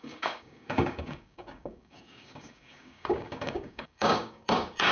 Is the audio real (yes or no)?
no